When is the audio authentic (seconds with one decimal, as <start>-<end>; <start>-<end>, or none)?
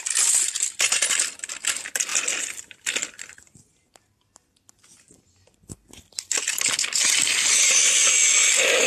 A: 0.0-8.9